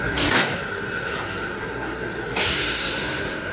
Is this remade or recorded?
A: remade